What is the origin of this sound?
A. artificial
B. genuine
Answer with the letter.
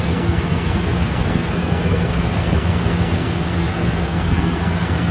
A